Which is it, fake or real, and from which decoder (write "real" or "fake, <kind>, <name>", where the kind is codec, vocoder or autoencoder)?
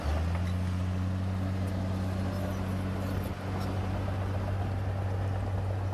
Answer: real